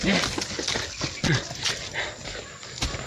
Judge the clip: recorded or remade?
recorded